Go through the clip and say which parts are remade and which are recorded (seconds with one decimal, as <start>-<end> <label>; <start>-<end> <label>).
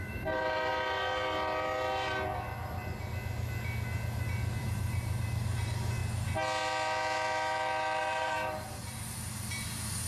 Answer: 0.0-0.7 remade; 0.7-4.6 recorded; 4.6-6.0 remade; 6.0-8.0 recorded; 8.0-10.1 remade